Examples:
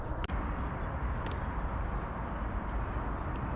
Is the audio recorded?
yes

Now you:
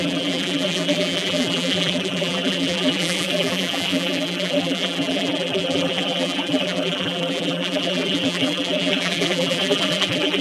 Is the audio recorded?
no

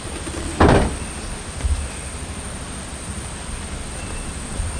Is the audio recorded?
no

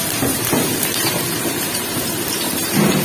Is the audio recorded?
no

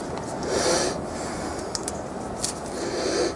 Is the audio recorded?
yes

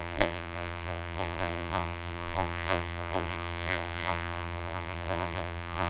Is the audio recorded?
no